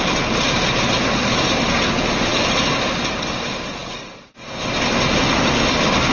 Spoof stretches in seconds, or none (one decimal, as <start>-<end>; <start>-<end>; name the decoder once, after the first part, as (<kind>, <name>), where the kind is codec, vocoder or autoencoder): none